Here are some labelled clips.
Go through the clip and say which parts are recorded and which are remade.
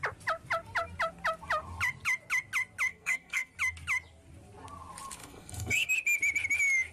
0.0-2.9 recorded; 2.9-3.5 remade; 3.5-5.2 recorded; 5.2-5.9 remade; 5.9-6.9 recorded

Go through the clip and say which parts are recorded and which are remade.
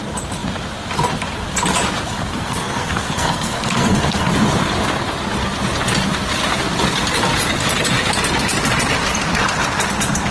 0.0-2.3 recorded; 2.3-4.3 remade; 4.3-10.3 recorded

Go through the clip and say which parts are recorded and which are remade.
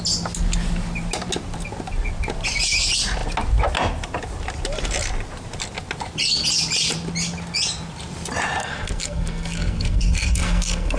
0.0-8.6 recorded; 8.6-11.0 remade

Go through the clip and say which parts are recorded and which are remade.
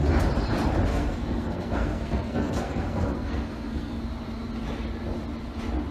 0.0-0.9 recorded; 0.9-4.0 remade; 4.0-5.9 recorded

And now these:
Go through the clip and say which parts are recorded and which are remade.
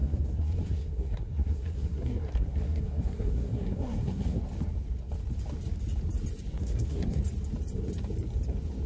0.0-4.4 remade; 4.4-6.6 recorded; 6.6-7.2 remade; 7.2-8.9 recorded